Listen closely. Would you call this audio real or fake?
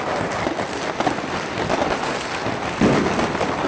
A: real